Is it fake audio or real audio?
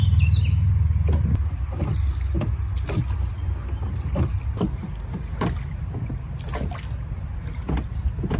real